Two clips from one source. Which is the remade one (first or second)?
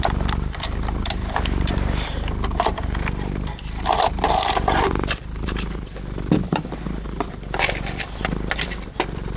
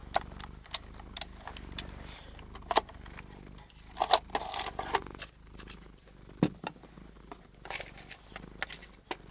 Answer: first